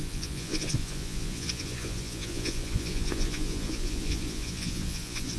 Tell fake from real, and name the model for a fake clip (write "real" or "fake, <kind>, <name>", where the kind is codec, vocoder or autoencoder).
fake, vocoder, Vocos